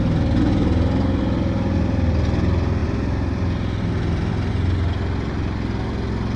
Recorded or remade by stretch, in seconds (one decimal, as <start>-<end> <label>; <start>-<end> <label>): 0.0-2.8 recorded; 2.8-4.3 remade; 4.3-6.4 recorded